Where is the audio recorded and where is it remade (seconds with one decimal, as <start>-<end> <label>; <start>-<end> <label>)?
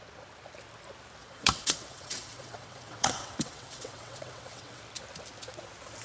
0.0-1.2 recorded; 1.2-4.8 remade; 4.8-6.0 recorded